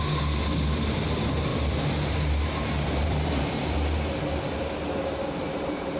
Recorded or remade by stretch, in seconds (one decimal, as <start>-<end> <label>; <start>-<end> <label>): 0.0-1.5 recorded; 1.5-4.2 remade; 4.2-5.4 recorded; 5.4-6.0 remade